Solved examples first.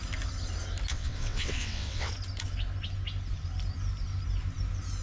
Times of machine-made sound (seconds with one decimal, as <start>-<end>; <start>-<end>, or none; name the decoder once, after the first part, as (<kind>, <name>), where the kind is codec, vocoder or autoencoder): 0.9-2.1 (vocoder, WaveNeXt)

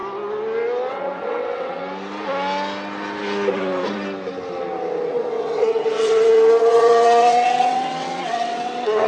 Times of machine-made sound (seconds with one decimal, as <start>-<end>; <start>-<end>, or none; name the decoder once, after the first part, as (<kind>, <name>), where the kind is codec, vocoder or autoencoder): 0.9-1.8 (vocoder, WaveNeXt); 5.1-9.1

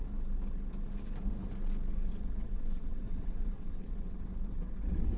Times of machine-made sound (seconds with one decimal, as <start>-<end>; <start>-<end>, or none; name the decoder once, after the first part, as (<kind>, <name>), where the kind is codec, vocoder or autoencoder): 1.9-5.2 (vocoder, WaveNeXt)

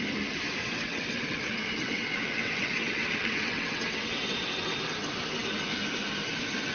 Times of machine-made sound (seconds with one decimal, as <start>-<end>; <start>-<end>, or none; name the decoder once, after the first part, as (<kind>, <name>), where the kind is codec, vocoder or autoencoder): 0.6-4.6 (vocoder, WaveNeXt)

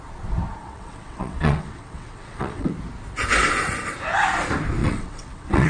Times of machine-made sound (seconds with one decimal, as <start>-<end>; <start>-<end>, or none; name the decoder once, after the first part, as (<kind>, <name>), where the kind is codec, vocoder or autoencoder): 0.6-2.7 (vocoder, WaveNeXt); 4.8-5.7

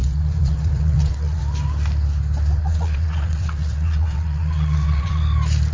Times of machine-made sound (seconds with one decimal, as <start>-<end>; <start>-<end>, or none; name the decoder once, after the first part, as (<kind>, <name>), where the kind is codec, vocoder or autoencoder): 0.0-1.4 (vocoder, WaveNeXt); 2.6-5.2

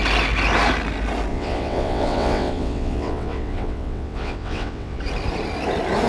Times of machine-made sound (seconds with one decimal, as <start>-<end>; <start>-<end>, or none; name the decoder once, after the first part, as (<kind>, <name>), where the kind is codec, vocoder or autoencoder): 1.3-5.0 (vocoder, WaveNeXt)